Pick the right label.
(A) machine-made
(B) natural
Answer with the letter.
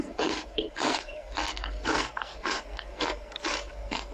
A